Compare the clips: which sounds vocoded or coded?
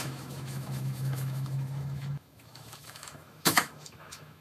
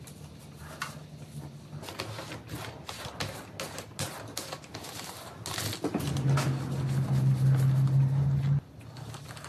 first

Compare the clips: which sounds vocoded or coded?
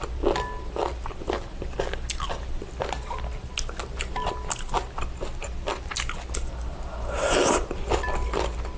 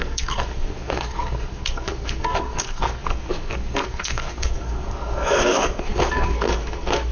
second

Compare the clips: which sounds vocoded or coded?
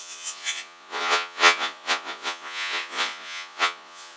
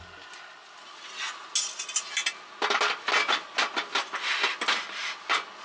first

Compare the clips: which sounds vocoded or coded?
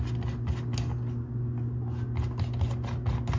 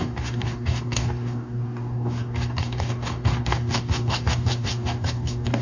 second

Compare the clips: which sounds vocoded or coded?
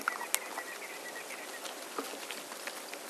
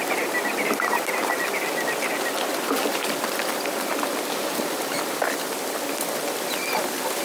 second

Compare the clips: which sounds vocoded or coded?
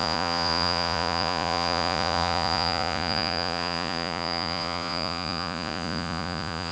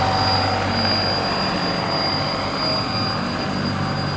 first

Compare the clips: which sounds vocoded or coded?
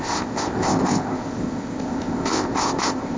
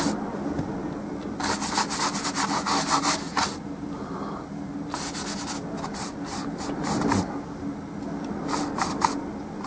first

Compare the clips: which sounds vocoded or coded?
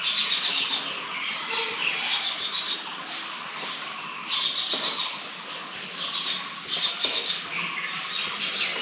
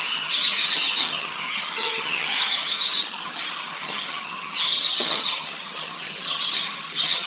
second